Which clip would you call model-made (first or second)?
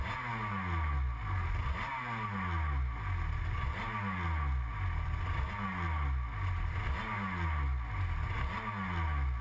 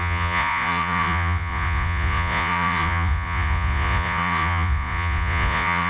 second